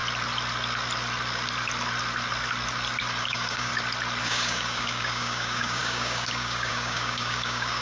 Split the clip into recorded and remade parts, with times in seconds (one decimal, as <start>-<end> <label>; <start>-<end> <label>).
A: 0.0-3.2 recorded; 3.2-3.7 remade; 3.7-4.2 recorded; 4.2-7.8 remade